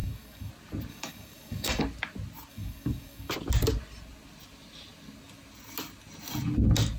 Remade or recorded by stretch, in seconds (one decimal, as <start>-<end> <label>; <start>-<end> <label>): 0.0-0.5 remade; 0.5-0.9 recorded; 0.9-1.8 remade; 1.8-2.5 recorded; 2.5-3.3 remade; 3.3-7.0 recorded